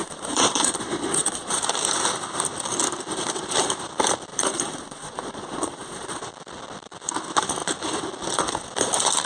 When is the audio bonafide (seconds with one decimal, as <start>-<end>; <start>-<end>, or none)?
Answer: 1.6-4.3; 6.2-9.3